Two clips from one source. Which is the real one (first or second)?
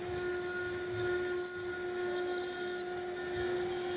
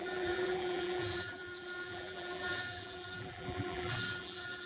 first